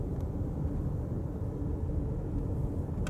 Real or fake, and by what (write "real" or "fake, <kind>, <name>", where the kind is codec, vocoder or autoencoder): real